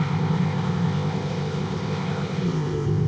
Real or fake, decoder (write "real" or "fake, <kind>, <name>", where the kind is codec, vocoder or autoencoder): fake, codec, ZipCodec